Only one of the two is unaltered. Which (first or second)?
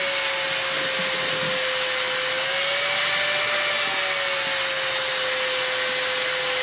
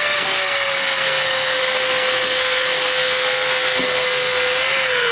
first